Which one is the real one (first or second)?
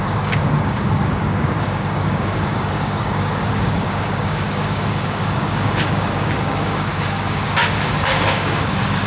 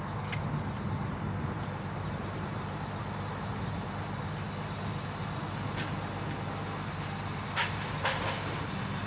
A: second